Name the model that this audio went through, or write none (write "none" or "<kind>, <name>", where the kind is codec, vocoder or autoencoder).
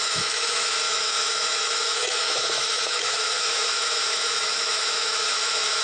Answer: autoencoder, DAC-VAE